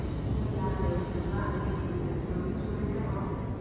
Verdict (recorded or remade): recorded